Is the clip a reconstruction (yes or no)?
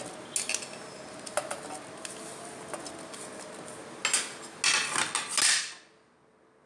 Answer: no